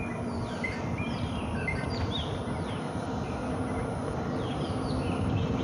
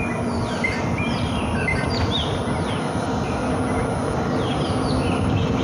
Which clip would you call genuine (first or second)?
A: second